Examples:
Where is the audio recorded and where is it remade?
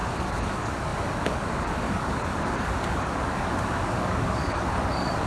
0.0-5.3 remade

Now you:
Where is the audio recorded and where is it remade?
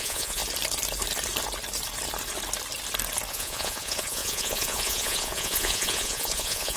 0.0-0.4 remade; 0.4-3.3 recorded; 3.3-6.8 remade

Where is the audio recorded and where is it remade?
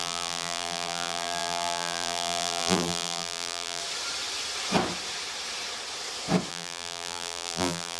0.0-3.8 remade; 3.8-6.5 recorded; 6.5-8.0 remade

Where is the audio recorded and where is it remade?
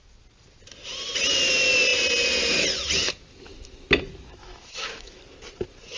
0.0-4.4 recorded; 4.4-5.2 remade; 5.2-6.0 recorded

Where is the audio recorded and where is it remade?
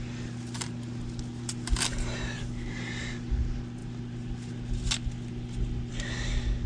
0.0-6.7 recorded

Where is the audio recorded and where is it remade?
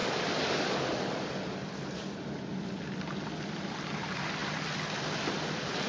0.0-5.9 recorded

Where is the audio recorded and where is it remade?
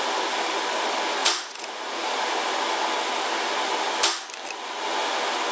0.0-1.2 recorded; 1.2-2.1 remade; 2.1-5.5 recorded